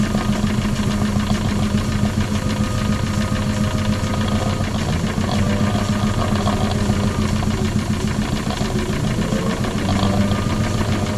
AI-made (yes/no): no